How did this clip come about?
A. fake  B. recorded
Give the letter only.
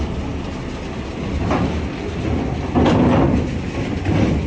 B